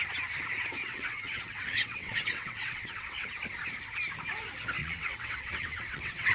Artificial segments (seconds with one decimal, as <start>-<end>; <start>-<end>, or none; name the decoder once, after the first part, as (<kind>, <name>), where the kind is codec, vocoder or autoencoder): 0.8-3.3 (vocoder, WaveNeXt); 4.8-6.3